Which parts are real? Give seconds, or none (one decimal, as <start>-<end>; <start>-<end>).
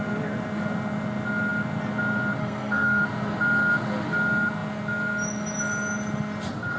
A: 0.0-2.4; 3.0-6.8